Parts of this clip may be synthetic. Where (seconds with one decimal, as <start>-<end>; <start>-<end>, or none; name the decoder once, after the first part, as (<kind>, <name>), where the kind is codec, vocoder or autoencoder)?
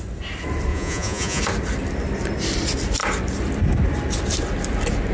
0.7-1.4 (vocoder, Vocos)